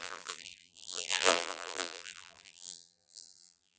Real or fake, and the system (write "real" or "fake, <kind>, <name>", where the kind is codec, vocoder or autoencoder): fake, vocoder, BigVGAN v2